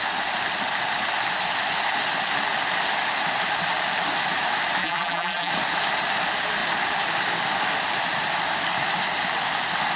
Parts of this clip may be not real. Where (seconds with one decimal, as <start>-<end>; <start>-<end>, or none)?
4.8-5.5